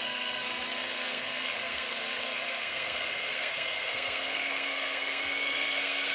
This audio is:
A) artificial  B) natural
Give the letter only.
A